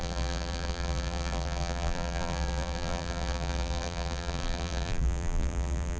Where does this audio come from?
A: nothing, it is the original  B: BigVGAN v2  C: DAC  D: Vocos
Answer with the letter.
B